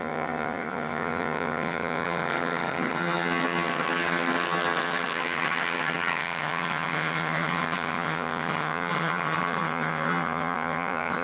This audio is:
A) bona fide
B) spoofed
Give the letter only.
B